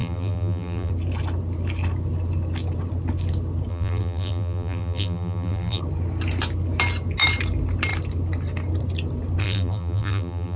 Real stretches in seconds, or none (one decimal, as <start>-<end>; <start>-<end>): 0.9-3.7; 5.8-9.4